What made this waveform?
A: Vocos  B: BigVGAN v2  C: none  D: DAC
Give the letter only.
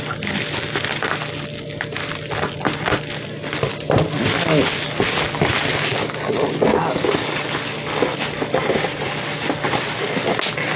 C